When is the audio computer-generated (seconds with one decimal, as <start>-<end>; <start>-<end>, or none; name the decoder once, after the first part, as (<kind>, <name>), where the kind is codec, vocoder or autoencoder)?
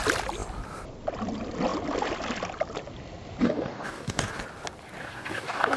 3.4-4.4 (codec, DAC); 5.0-5.8